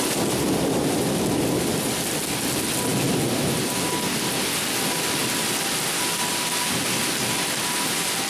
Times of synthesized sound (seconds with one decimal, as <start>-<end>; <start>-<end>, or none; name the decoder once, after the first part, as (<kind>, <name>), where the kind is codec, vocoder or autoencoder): none